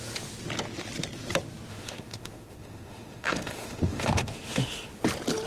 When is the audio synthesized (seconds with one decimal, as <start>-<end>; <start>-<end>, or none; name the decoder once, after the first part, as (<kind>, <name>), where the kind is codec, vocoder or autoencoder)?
1.7-5.0 (autoencoder, DAC-VAE)